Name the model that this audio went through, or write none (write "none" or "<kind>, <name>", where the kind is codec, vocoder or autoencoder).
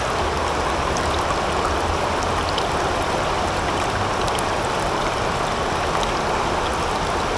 none